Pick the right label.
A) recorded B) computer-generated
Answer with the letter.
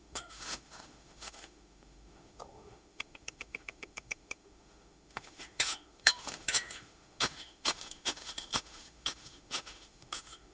B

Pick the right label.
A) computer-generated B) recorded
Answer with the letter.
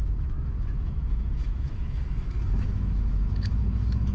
A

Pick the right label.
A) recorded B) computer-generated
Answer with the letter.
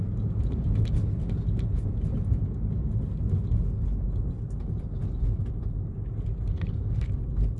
A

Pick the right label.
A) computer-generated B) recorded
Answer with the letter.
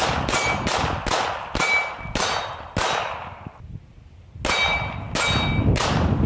B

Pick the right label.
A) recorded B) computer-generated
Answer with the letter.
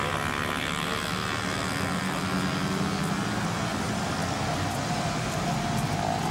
A